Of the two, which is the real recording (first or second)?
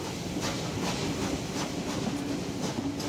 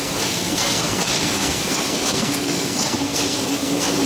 first